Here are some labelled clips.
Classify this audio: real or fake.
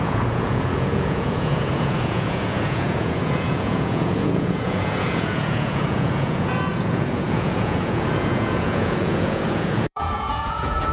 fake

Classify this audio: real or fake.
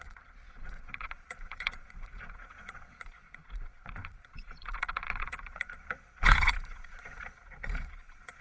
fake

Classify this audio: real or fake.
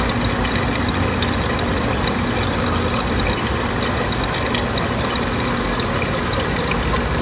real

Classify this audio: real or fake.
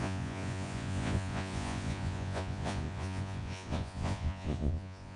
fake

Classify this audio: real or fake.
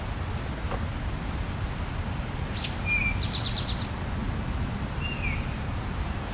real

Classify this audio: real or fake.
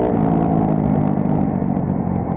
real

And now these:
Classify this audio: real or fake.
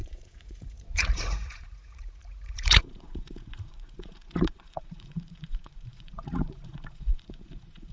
fake